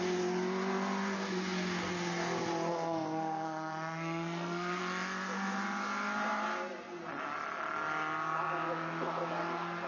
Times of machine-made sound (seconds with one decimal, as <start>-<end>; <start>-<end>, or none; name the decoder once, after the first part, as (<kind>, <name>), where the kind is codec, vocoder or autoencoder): 2.7-4.8 (codec, SNAC)